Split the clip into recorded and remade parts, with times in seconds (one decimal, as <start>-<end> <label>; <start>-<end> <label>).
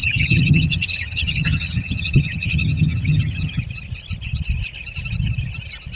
0.0-3.6 remade; 3.6-6.0 recorded